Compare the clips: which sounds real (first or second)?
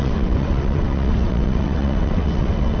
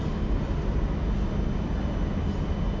second